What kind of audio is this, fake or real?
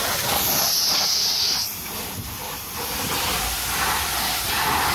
real